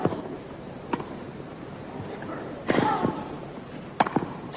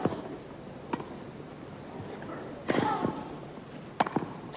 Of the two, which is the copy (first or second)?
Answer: first